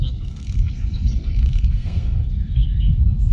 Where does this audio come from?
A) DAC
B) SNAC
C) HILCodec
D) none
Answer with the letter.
B